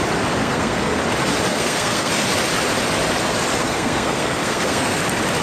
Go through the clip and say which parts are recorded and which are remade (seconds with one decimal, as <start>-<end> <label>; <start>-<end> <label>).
0.0-0.4 recorded; 0.4-1.0 remade; 1.0-1.5 recorded; 1.5-2.1 remade; 2.1-3.6 recorded; 3.6-5.0 remade; 5.0-5.4 recorded